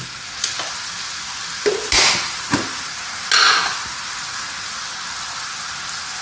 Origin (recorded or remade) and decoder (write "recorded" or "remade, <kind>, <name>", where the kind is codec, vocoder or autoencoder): recorded